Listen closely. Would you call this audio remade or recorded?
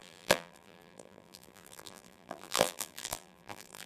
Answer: remade